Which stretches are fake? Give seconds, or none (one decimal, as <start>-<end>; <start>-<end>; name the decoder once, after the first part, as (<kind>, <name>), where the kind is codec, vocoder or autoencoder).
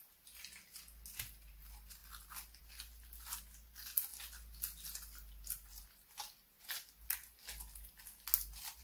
none